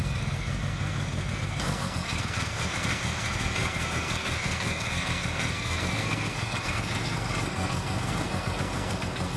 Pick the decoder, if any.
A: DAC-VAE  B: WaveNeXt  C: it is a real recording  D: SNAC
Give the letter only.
D